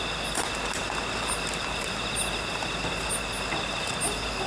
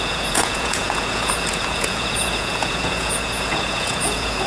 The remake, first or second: second